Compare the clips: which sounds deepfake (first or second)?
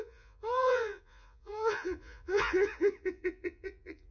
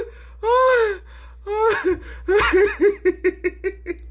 first